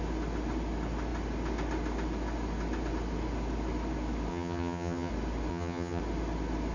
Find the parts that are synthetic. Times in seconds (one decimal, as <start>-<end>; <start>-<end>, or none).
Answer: 4.3-5.1; 5.5-6.0